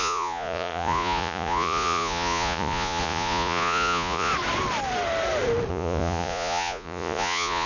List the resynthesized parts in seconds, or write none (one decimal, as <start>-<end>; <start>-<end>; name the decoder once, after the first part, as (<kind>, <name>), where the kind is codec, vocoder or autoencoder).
0.0-4.3 (vocoder, Vocos); 5.7-7.7